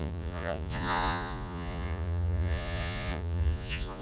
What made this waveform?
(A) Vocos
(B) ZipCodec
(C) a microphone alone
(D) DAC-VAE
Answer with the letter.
A